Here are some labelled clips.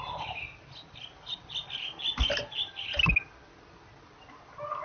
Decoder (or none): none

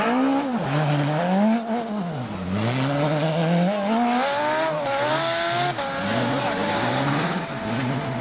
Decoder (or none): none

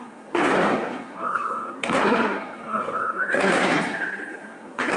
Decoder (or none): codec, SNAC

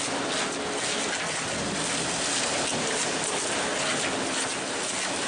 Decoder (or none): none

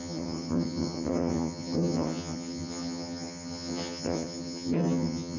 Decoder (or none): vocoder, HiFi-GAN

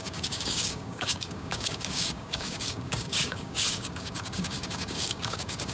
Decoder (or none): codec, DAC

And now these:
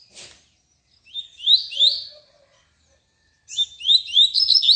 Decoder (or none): none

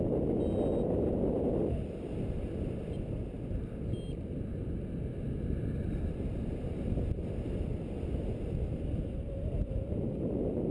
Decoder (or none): none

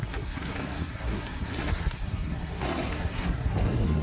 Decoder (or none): codec, SNAC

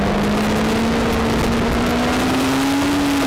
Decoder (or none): none